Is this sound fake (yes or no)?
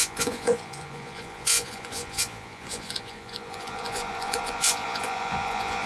yes